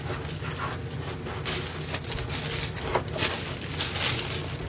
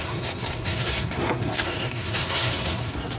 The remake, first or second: second